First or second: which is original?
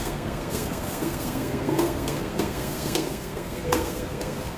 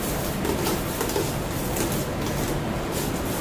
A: second